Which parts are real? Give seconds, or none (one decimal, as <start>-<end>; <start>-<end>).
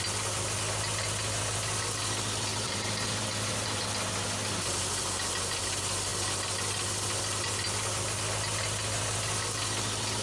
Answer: 0.0-2.5; 3.9-10.2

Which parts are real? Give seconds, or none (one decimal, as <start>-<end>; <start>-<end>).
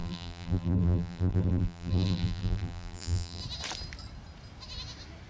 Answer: 3.4-5.3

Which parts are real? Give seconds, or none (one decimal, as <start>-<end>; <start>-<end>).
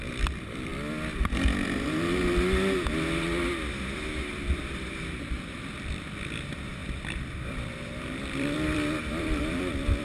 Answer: 0.7-4.2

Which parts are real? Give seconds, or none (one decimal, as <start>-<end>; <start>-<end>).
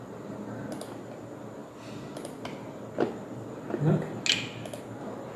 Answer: 0.0-5.4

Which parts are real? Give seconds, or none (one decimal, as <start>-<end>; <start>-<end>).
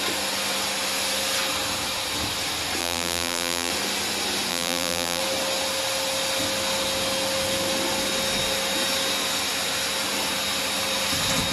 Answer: 0.0-2.8; 3.7-4.5; 5.2-11.5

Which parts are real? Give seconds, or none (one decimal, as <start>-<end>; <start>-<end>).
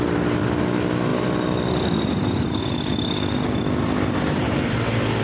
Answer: 0.0-5.2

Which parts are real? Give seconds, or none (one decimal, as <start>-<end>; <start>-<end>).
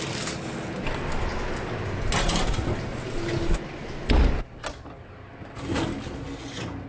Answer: 0.0-6.9